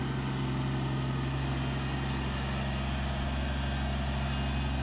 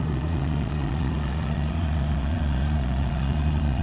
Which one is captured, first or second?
first